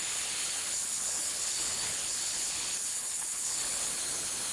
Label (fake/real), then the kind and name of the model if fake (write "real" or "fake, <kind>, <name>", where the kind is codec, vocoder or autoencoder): fake, codec, HILCodec